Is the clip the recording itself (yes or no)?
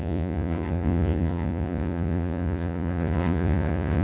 no